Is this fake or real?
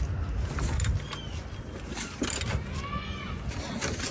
real